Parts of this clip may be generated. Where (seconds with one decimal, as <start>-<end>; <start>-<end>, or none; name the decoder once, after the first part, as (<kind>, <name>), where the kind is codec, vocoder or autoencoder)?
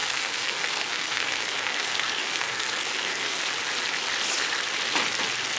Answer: 0.0-3.4 (codec, SNAC)